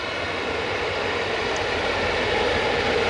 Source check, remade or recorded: remade